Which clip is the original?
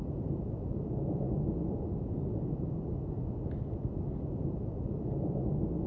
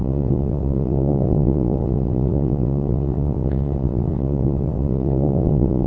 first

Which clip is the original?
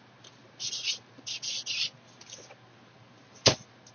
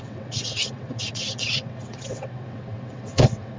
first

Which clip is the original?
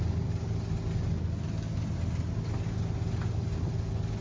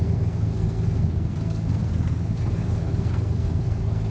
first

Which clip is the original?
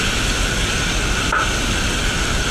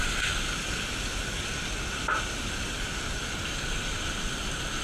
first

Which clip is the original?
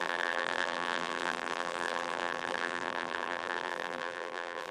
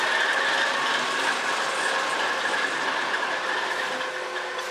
second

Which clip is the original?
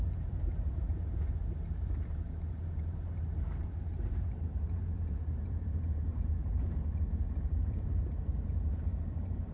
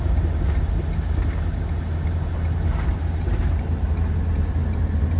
second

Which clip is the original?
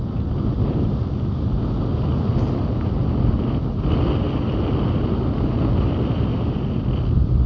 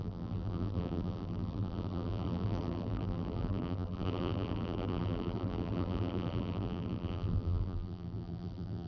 first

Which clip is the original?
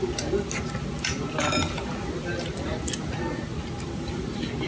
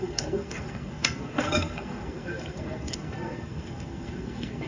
first